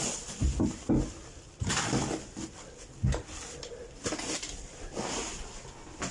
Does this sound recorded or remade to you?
recorded